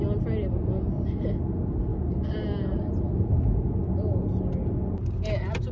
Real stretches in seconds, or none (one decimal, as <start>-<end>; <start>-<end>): 0.0-5.7